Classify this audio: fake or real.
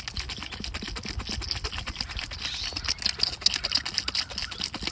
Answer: real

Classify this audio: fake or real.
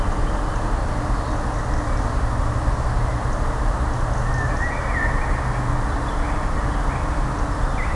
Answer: real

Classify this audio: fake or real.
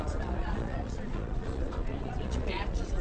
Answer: fake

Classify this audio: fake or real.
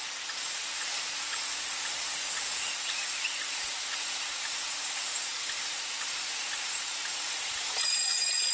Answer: fake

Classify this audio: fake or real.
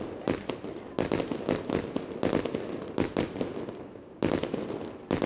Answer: real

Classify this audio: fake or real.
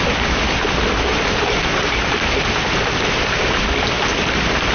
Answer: real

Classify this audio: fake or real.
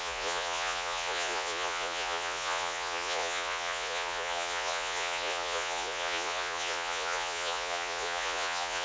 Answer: fake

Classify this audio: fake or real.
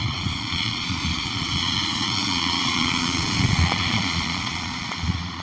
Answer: fake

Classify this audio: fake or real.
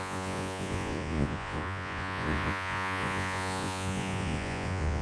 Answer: fake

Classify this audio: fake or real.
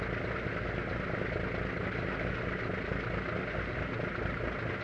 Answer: real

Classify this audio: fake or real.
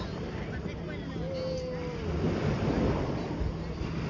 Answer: real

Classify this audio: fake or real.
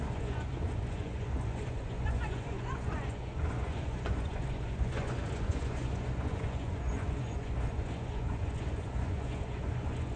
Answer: fake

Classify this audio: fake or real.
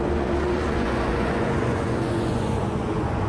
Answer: fake